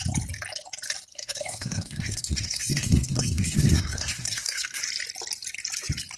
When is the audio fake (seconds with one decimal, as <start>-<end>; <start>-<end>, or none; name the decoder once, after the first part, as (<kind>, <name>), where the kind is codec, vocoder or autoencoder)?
1.1-4.8 (codec, SNAC)